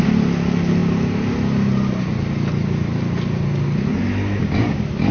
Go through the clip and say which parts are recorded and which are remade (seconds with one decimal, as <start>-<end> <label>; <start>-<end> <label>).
0.0-5.1 recorded